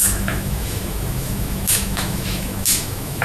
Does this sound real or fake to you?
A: fake